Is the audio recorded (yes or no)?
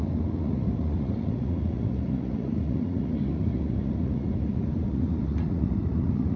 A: no